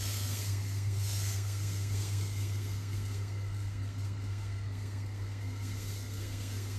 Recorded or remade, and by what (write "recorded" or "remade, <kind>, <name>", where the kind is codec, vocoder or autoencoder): remade, codec, SNAC